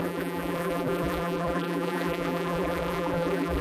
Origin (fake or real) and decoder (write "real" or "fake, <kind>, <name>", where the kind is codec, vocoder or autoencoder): fake, vocoder, BigVGAN v2